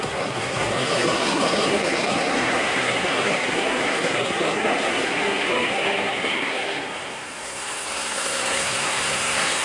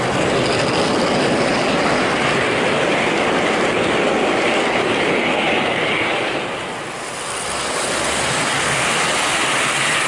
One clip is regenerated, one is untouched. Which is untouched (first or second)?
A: second